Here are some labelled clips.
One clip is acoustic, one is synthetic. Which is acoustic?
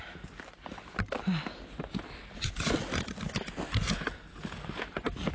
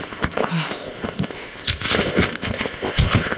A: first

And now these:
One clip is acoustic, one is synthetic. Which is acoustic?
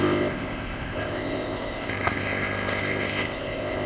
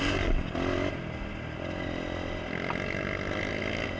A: second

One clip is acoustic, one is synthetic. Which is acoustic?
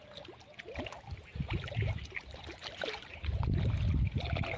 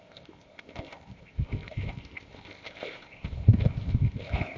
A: first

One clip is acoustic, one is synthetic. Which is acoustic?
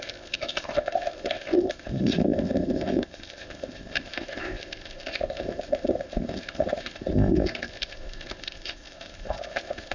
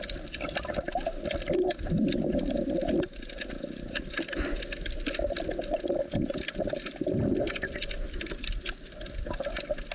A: second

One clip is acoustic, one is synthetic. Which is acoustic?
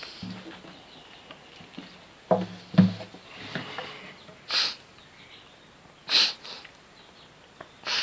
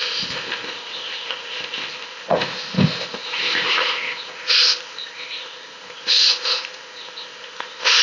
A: first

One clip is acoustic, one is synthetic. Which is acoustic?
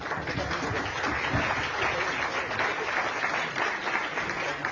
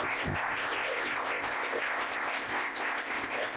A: first